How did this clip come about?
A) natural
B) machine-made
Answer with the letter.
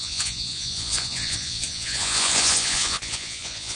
B